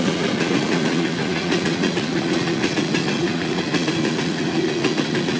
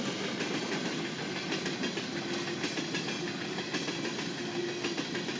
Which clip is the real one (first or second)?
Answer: second